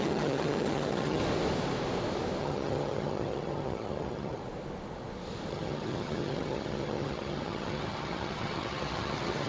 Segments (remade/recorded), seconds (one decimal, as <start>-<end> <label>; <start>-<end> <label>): 0.0-1.2 remade; 1.2-2.4 recorded; 2.4-4.4 remade; 4.4-5.5 recorded; 5.5-9.5 remade